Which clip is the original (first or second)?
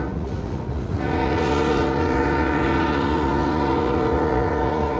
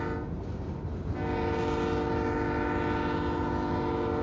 second